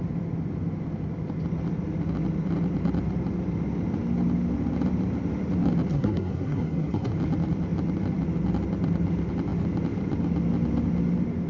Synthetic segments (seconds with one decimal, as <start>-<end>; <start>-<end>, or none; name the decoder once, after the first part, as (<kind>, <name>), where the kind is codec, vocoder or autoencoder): 5.9-7.1 (codec, SNAC)